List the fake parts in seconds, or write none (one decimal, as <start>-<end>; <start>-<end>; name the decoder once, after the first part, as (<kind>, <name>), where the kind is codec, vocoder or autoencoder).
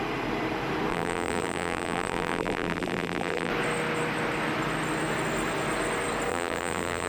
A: 0.9-3.5 (vocoder, BigVGAN v2); 6.3-7.1